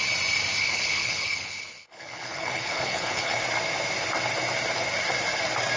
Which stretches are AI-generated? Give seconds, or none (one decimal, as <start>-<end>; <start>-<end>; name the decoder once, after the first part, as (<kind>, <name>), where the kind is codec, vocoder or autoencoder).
0.6-3.4 (codec, HILCodec)